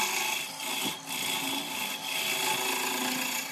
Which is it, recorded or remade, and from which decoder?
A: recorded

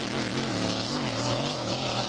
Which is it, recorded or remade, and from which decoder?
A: remade, autoencoder, DAC-VAE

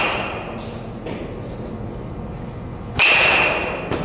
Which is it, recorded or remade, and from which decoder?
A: recorded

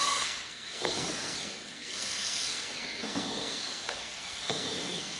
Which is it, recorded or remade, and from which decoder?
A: remade, codec, SNAC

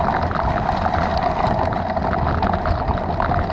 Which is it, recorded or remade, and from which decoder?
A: recorded